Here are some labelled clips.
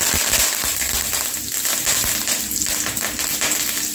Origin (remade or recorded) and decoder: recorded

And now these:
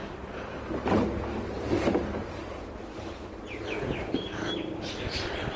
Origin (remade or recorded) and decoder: remade, vocoder, BigVGAN v2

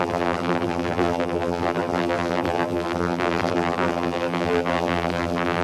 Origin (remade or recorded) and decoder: remade, vocoder, BigVGAN v2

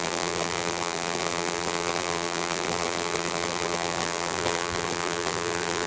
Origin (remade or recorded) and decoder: remade, vocoder, BigVGAN v2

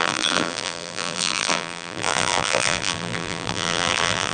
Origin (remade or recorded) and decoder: remade, vocoder, BigVGAN v2